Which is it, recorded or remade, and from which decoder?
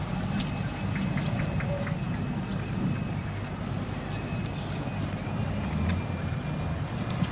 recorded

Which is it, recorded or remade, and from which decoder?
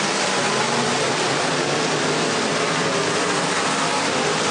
recorded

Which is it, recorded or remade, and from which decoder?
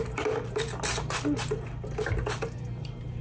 recorded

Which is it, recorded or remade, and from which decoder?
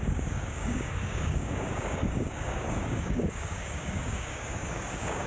remade, codec, DAC